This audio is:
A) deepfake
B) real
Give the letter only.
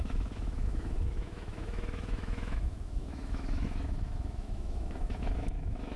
A